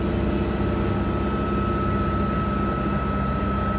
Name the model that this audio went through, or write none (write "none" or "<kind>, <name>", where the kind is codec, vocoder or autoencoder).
none